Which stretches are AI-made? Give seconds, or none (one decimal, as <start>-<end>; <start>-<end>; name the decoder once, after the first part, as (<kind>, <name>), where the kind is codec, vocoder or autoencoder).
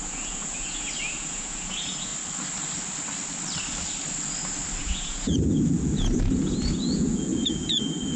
0.0-2.1 (vocoder, Vocos); 4.8-8.2